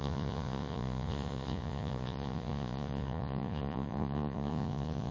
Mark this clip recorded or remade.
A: remade